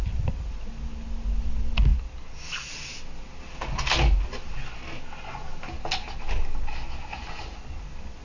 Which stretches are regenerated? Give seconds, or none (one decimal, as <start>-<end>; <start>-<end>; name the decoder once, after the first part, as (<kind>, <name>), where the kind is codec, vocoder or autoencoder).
none